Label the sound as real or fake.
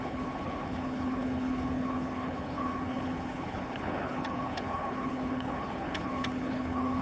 fake